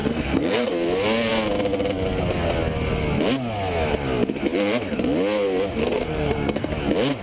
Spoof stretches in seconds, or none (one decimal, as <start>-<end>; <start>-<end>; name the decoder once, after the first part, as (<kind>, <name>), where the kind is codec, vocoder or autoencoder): 0.0-0.7 (codec, SNAC); 5.8-6.7

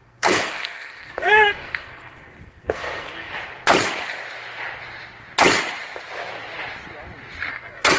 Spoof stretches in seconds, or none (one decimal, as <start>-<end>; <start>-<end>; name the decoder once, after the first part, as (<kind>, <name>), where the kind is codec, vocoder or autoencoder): 0.0-3.3 (codec, SNAC); 7.5-8.0

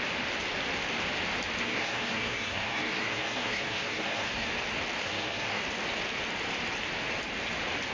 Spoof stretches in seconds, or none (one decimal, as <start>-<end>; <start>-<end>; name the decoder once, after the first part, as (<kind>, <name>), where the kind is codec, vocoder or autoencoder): 1.6-4.5 (codec, SNAC); 5.0-5.6

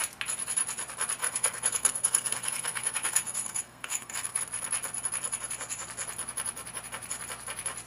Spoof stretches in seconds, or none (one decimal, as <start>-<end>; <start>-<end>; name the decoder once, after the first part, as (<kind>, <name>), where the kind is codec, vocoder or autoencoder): 1.2-4.4 (codec, SNAC)